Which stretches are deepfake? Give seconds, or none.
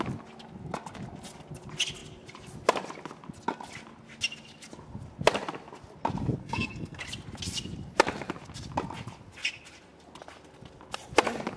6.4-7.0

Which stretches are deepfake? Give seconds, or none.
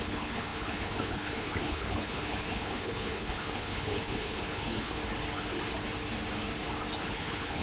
0.0-5.0; 7.0-7.6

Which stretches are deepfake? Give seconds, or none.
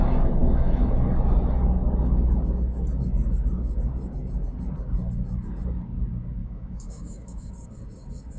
0.4-0.9; 6.4-7.5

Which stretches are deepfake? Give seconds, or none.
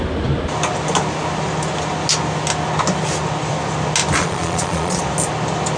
4.2-5.0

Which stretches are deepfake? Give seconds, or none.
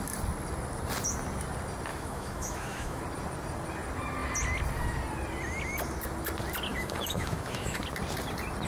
1.9-3.0; 6.7-7.8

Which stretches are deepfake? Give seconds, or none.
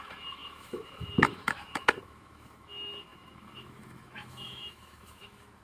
0.0-5.6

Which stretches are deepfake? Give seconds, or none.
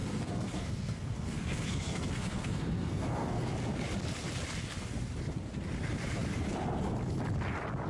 0.0-3.5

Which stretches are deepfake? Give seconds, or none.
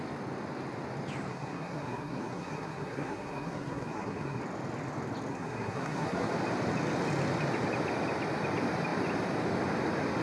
1.3-4.4; 5.3-6.3